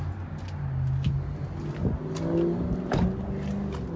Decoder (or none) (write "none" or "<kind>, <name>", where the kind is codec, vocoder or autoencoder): none